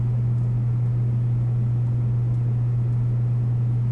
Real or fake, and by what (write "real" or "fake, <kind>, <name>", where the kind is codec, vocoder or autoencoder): real